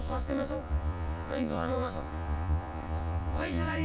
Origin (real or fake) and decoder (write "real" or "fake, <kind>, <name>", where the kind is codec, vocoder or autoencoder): fake, vocoder, Vocos